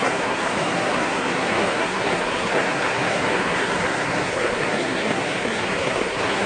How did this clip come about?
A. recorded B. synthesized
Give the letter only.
B